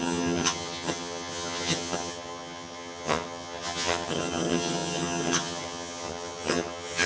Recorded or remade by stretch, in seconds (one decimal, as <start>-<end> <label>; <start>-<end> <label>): 0.0-7.1 remade